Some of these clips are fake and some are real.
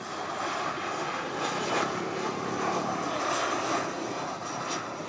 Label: real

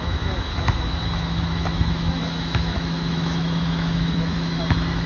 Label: fake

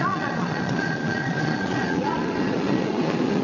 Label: fake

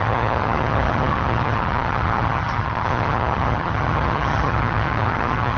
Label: fake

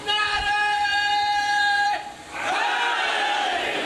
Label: fake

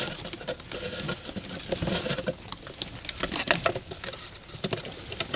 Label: real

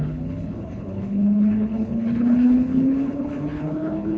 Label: fake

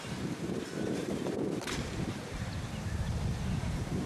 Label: fake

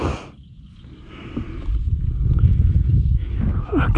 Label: real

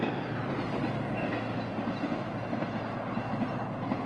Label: real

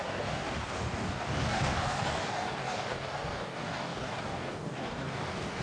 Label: fake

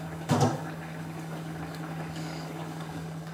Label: fake